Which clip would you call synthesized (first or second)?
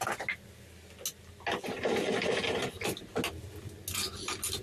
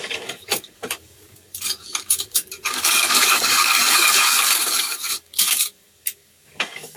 second